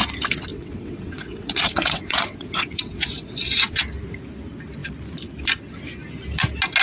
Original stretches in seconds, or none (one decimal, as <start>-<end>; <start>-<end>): 0.0-0.5; 3.8-6.8